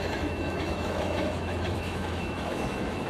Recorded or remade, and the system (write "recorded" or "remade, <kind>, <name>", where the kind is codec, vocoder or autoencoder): remade, autoencoder, DAC-VAE